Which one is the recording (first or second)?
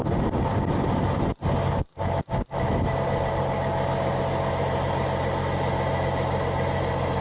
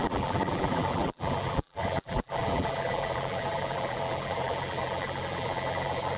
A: first